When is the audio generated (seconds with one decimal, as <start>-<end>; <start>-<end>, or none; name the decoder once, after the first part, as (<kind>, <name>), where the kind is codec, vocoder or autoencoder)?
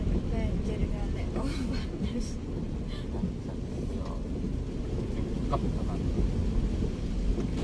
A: none